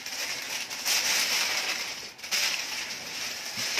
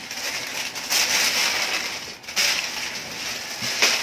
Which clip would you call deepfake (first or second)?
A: first